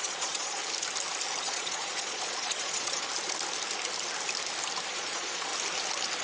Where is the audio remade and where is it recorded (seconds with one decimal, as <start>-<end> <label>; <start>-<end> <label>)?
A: 0.0-0.6 remade; 0.6-1.4 recorded; 1.4-3.1 remade; 3.1-4.9 recorded; 4.9-5.5 remade; 5.5-6.2 recorded